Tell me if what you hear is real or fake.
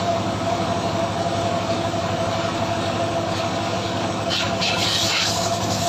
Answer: fake